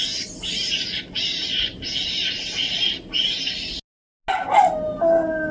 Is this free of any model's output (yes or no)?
yes